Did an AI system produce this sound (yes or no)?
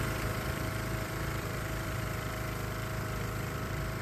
yes